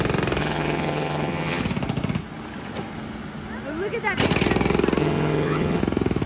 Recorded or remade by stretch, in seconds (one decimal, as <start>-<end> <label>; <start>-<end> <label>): 0.0-0.4 recorded; 0.4-1.6 remade; 1.6-5.0 recorded; 5.0-5.8 remade; 5.8-6.3 recorded